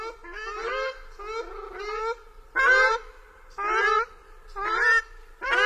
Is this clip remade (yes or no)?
no